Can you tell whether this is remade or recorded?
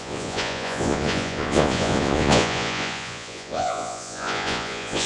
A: remade